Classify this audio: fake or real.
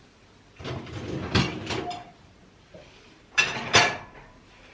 fake